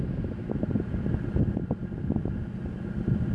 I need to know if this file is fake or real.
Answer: real